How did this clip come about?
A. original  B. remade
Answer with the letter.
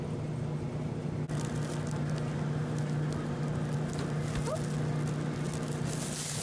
A